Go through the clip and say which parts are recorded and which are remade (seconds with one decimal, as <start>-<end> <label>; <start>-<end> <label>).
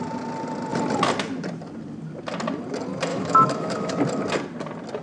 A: 0.0-3.1 recorded; 3.1-3.9 remade; 3.9-5.0 recorded